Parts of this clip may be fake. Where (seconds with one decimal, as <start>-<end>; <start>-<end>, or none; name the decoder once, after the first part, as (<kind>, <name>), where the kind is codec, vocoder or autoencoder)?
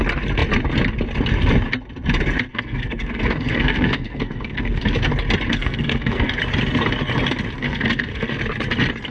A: 2.5-5.1 (codec, SNAC); 5.5-6.4; 7.6-8.4